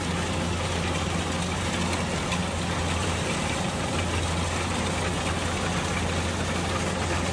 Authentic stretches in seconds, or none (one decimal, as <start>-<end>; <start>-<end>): 0.0-3.0; 4.0-7.3